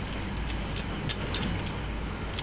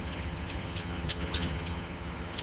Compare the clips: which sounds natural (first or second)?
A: first